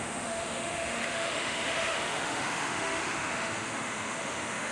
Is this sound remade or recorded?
remade